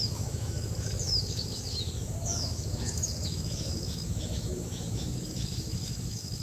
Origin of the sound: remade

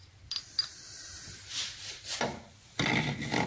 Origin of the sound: recorded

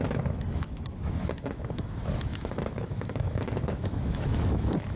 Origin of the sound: remade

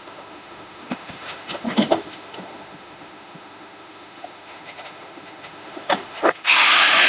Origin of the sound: remade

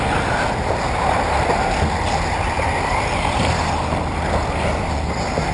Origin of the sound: recorded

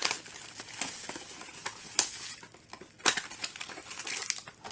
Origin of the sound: recorded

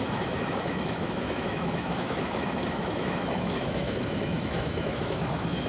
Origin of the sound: remade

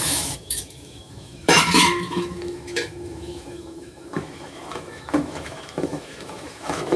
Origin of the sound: remade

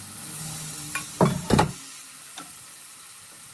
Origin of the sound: recorded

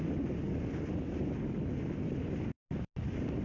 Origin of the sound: recorded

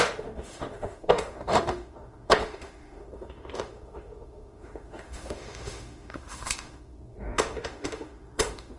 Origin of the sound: remade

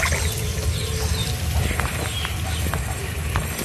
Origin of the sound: recorded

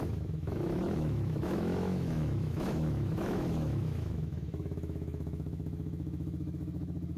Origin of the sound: remade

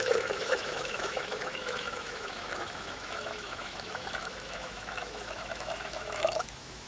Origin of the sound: remade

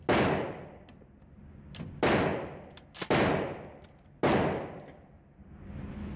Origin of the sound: recorded